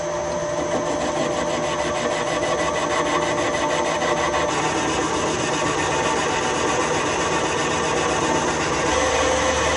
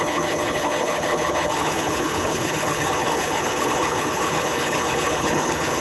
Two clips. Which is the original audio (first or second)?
first